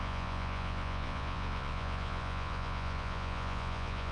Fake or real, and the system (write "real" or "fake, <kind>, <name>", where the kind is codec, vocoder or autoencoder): fake, vocoder, Vocos